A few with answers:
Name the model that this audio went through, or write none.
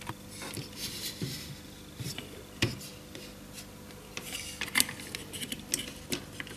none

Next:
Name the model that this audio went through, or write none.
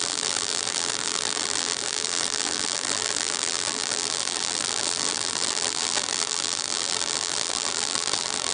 vocoder, BigVGAN v2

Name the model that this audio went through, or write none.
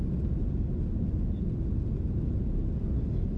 none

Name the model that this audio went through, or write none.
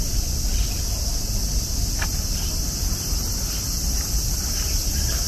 none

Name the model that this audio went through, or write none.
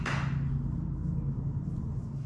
none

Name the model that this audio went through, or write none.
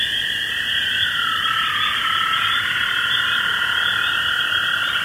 none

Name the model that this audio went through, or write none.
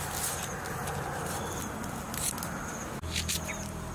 none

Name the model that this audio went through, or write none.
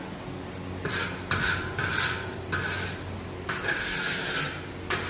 none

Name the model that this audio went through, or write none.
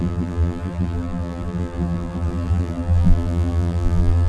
vocoder, BigVGAN v2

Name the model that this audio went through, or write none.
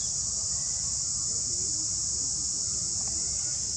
none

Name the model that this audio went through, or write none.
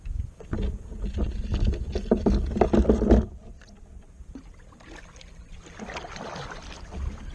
none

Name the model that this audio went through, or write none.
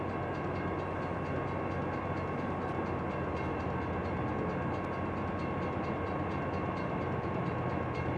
none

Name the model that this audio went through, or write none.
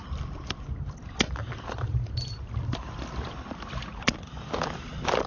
vocoder, BigVGAN v2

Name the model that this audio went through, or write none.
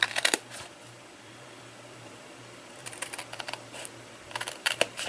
vocoder, BigVGAN v2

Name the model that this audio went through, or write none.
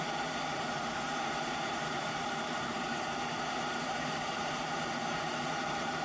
vocoder, BigVGAN v2